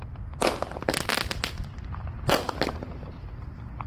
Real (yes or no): yes